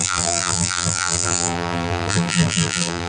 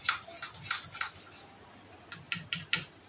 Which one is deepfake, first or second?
first